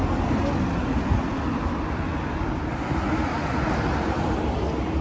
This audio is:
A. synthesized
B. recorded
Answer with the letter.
B